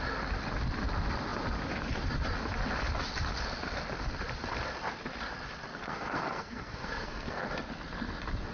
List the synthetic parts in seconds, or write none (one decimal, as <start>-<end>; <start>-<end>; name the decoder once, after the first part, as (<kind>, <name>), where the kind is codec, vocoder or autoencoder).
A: 5.7-7.5 (codec, SNAC)